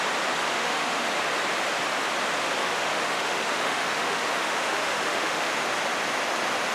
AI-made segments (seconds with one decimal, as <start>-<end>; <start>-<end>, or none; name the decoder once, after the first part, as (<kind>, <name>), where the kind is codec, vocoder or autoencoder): 0.4-1.1 (autoencoder, DAC-VAE); 2.6-5.5